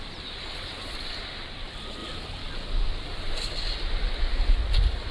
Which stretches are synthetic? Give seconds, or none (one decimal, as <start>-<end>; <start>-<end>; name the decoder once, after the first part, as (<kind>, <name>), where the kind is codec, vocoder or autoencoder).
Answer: none